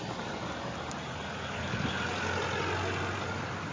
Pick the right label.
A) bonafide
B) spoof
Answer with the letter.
A